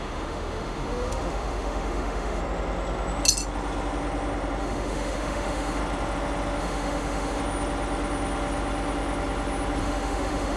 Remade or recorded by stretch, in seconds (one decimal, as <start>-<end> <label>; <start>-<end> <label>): 0.0-2.4 remade; 2.4-4.6 recorded; 4.6-5.8 remade; 5.8-6.6 recorded; 6.6-7.4 remade; 7.4-9.8 recorded; 9.8-10.6 remade